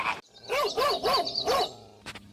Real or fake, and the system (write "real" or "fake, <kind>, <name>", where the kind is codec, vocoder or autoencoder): real